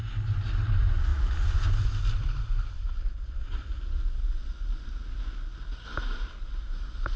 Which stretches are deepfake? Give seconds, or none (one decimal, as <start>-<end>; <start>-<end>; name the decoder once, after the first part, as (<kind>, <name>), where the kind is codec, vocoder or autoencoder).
none